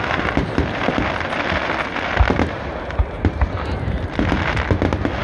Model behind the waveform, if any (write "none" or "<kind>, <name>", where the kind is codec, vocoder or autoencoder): none